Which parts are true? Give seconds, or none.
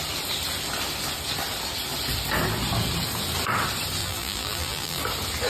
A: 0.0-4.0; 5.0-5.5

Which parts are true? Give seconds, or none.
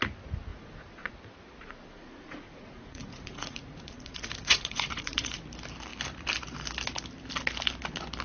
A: 0.0-0.5; 1.1-1.6; 5.4-8.2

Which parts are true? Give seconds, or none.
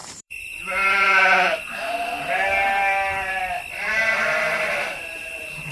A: 3.4-4.9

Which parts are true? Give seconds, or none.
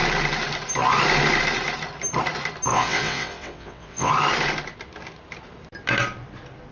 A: 0.0-2.7; 4.1-6.7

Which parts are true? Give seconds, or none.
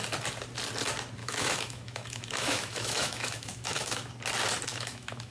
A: 0.0-1.2; 4.1-4.7